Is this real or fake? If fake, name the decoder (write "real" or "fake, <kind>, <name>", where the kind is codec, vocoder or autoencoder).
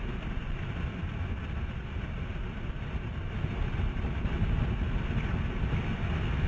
real